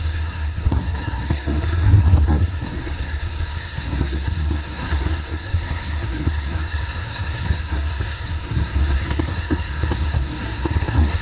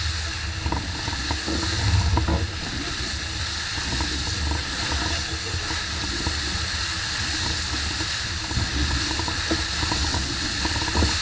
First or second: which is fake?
first